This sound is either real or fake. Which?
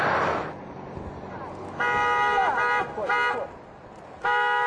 real